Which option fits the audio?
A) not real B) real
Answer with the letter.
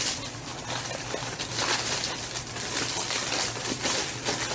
B